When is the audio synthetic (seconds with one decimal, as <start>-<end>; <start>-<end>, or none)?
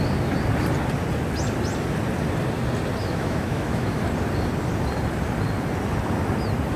3.0-4.0